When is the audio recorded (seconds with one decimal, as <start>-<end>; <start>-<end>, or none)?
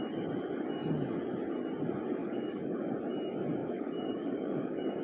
0.0-2.2; 2.9-3.6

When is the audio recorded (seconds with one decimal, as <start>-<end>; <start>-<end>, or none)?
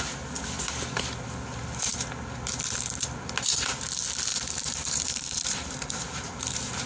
0.0-4.3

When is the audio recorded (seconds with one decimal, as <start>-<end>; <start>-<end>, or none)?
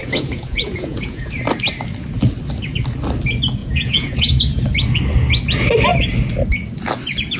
1.3-3.6; 4.6-7.4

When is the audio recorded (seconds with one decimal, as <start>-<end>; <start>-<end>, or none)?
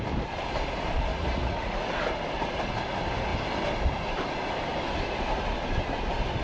0.0-1.1; 1.9-6.4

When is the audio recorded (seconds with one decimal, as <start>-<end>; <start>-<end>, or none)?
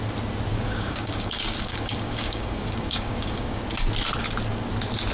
0.0-0.5; 3.6-5.1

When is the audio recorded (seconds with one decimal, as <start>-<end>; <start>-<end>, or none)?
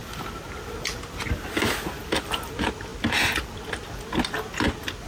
0.0-5.1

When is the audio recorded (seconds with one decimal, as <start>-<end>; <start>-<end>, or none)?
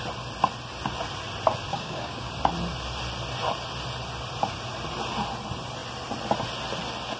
0.0-1.7; 2.3-7.2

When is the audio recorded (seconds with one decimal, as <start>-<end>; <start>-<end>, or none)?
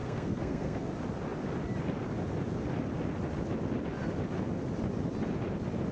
0.9-5.9